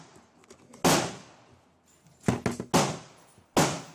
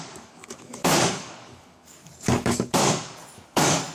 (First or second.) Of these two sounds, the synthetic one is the second